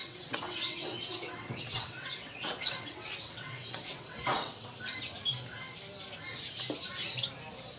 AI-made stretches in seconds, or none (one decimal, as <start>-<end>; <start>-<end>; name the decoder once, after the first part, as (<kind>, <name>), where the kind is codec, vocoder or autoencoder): 0.0-4.7 (vocoder, WaveNeXt)